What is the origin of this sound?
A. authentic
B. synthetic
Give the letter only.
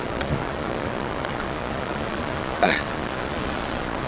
B